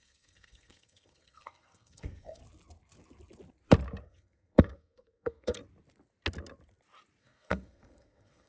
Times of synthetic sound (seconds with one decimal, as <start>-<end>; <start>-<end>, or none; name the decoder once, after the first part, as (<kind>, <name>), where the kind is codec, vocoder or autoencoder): 0.0-2.4 (codec, SNAC); 4.0-5.6; 7.2-8.5